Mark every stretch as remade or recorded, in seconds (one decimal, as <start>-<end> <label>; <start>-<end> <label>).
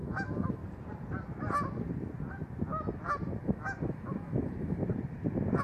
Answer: 0.0-0.6 remade; 0.6-3.4 recorded; 3.4-4.8 remade; 4.8-5.6 recorded